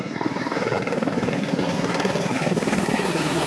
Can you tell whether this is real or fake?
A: fake